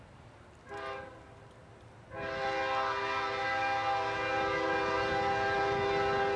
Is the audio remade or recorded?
recorded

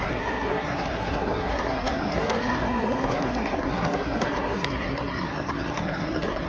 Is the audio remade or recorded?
remade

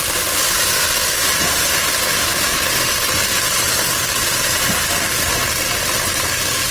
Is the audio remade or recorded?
recorded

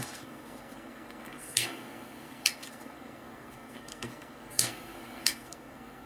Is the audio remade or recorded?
remade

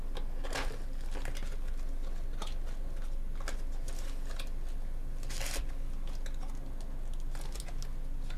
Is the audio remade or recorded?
recorded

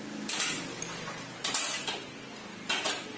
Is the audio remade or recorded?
recorded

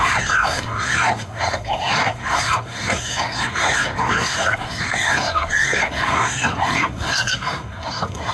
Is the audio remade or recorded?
remade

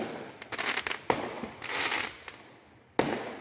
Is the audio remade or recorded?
recorded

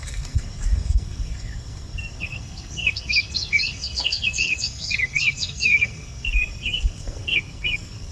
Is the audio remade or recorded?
remade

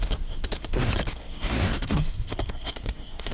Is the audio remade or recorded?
remade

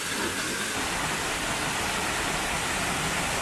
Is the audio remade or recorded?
recorded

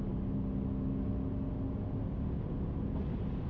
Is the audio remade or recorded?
recorded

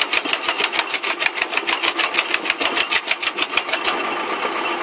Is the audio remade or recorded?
recorded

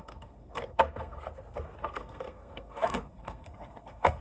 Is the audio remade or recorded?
remade